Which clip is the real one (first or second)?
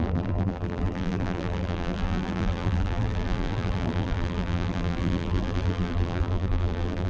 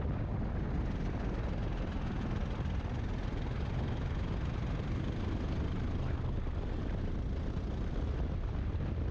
second